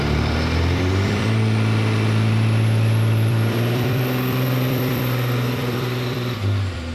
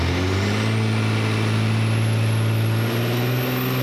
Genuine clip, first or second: second